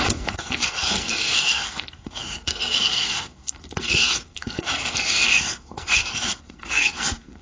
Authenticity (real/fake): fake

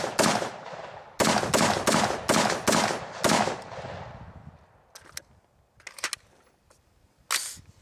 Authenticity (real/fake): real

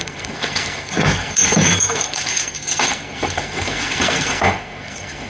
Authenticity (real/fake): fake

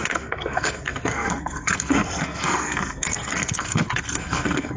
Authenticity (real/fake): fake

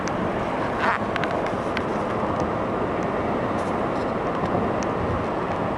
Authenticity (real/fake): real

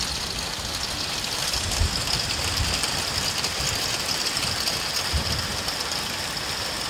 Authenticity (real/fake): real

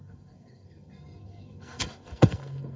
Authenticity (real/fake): fake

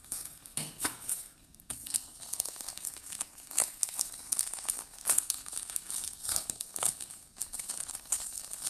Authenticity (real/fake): fake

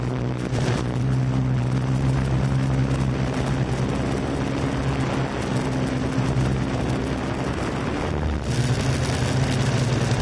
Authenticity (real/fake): real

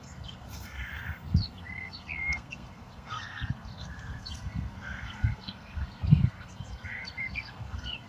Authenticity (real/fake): fake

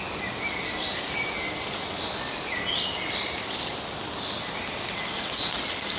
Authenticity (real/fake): real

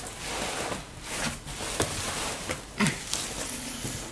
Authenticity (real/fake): real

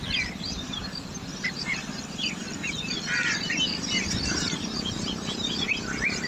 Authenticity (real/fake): real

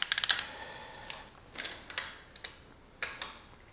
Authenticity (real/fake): real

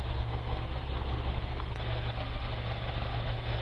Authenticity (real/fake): fake